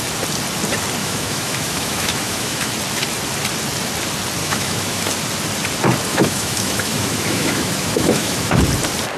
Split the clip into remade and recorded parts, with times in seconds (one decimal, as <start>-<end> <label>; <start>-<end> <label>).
0.0-1.0 recorded; 1.0-2.7 remade; 2.7-4.4 recorded; 4.4-5.1 remade; 5.1-6.1 recorded; 6.1-8.6 remade; 8.6-9.2 recorded